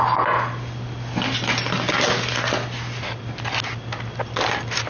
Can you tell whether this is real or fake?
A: real